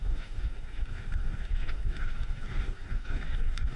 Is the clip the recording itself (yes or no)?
no